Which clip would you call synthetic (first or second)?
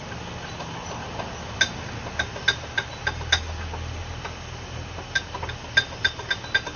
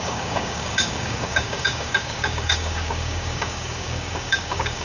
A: second